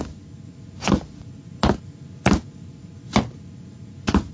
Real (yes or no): yes